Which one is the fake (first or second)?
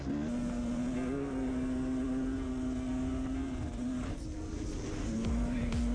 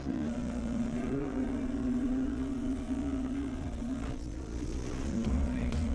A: second